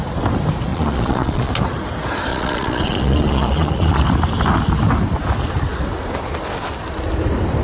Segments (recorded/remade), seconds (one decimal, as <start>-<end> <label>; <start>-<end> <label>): 0.0-0.7 recorded; 0.7-1.5 remade; 1.5-2.3 recorded; 2.3-4.0 remade; 4.0-7.6 recorded

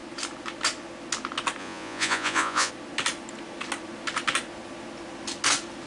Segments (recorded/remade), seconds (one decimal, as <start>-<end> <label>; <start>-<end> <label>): 0.0-1.6 recorded; 1.6-2.7 remade; 2.7-5.9 recorded

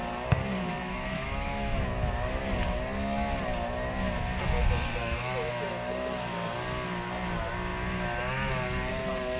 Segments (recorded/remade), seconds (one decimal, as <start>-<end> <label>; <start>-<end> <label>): 0.0-0.8 recorded; 0.8-2.4 remade; 2.4-5.0 recorded; 5.0-5.9 remade; 5.9-9.4 recorded

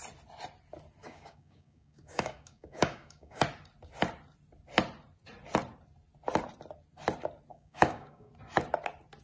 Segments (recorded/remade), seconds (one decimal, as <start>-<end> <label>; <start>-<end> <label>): 0.0-1.0 recorded; 1.0-3.4 remade; 3.4-7.5 recorded; 7.5-8.3 remade; 8.3-9.2 recorded

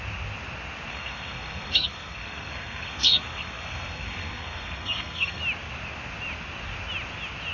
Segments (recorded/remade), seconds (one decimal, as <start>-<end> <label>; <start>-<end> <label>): 0.0-0.9 recorded; 0.9-5.4 remade; 5.4-7.5 recorded